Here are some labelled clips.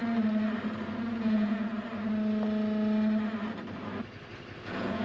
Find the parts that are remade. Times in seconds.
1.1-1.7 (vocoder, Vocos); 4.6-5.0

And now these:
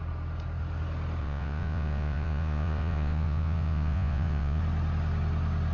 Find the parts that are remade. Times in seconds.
1.2-4.6 (vocoder, Vocos)

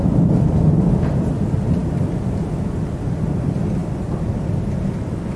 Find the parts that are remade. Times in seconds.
none

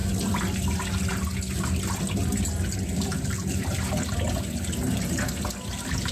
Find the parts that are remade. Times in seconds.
none